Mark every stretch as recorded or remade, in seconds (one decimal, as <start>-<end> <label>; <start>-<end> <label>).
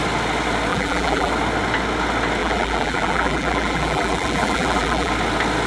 0.0-0.7 recorded; 0.7-1.3 remade; 1.3-2.4 recorded; 2.4-5.1 remade; 5.1-5.7 recorded